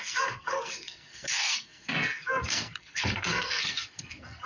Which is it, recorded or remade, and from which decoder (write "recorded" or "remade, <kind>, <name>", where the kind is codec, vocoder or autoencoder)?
remade, codec, SNAC